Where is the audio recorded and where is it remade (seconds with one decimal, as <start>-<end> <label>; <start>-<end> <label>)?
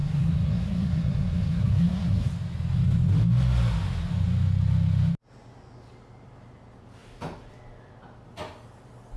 0.0-2.3 remade; 2.3-9.2 recorded